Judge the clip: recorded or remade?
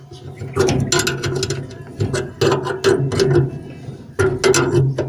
recorded